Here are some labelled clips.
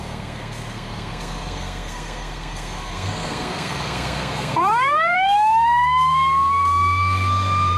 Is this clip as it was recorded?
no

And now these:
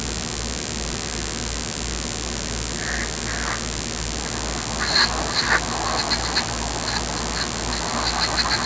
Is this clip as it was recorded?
yes